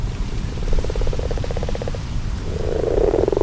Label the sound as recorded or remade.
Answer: remade